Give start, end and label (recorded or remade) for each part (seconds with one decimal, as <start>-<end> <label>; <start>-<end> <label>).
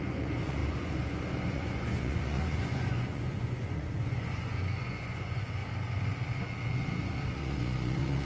0.0-5.6 remade; 5.6-7.0 recorded; 7.0-8.3 remade